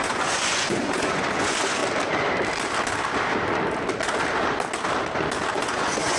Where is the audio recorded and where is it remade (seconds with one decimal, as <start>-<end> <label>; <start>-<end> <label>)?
0.0-1.8 remade; 1.8-5.5 recorded; 5.5-6.2 remade